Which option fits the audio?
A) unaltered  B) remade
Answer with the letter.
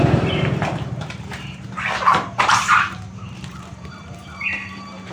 B